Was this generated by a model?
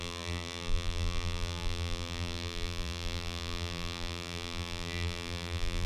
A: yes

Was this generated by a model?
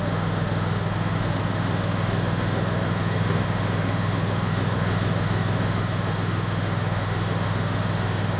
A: yes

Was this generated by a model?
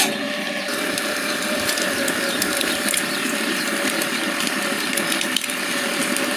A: no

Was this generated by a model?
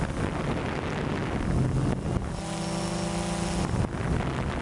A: no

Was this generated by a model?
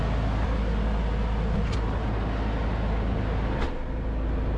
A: no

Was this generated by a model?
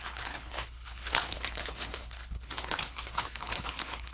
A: yes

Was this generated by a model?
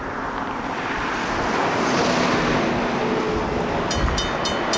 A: no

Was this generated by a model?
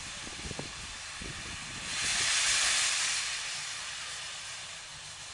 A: no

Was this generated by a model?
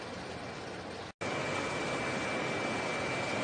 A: no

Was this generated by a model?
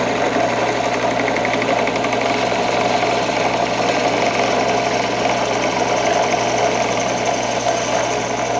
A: no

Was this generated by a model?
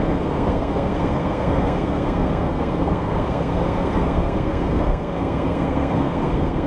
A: yes